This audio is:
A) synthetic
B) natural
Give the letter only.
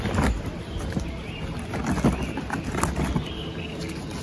B